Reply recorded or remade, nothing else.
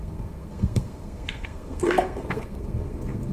remade